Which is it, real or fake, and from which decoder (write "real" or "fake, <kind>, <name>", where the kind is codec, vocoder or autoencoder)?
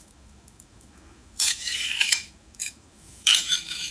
fake, autoencoder, DAC-VAE